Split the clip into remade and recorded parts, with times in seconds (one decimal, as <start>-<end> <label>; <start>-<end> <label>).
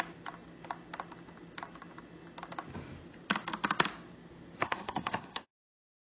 0.0-4.6 recorded; 4.6-6.2 remade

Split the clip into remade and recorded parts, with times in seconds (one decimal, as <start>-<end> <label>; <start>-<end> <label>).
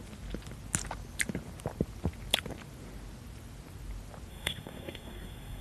0.0-4.3 recorded; 4.3-5.6 remade